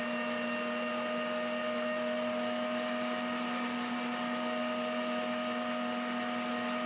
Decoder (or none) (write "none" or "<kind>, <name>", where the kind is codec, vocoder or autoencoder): none